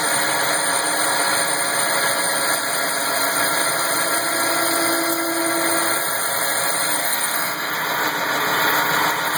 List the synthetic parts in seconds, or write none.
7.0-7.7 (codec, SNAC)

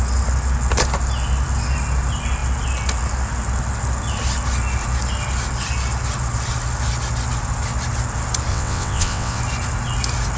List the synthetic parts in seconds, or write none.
8.5-9.4 (vocoder, WaveNeXt)